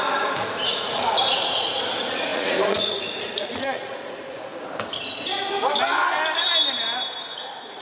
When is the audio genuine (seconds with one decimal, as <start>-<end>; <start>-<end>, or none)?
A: 4.5-7.3